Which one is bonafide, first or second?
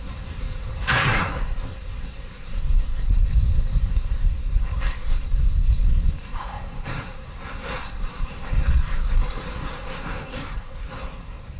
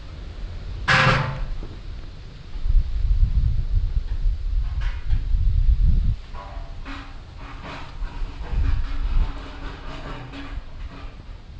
second